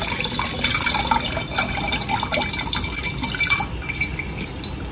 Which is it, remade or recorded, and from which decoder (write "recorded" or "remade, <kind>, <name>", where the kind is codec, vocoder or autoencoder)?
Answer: recorded